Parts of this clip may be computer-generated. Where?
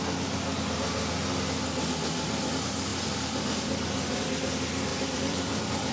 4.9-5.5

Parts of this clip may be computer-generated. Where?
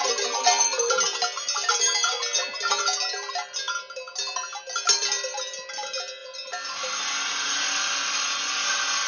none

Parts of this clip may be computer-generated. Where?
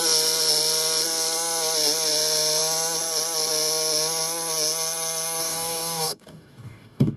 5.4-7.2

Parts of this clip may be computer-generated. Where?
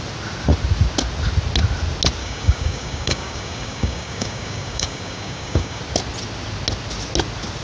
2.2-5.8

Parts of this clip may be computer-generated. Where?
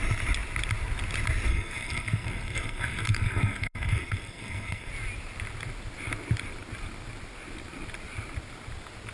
1.5-4.9